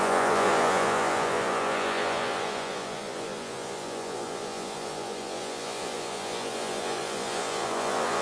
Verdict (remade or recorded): remade